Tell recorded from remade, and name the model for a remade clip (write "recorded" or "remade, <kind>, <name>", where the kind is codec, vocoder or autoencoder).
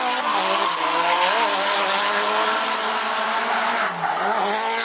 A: recorded